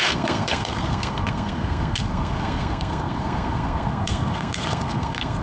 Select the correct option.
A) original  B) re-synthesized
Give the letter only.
B